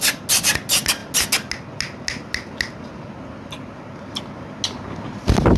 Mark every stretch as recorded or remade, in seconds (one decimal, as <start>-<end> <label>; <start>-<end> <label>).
0.0-5.6 recorded